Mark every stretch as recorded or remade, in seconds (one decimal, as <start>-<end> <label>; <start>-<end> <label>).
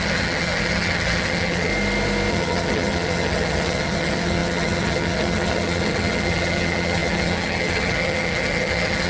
0.0-1.7 remade; 1.7-2.3 recorded; 2.3-9.1 remade